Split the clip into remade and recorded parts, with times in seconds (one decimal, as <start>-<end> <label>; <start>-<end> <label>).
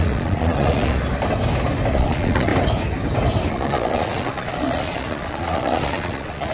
0.0-1.0 remade; 1.0-1.9 recorded; 1.9-2.5 remade; 2.5-3.5 recorded; 3.5-6.5 remade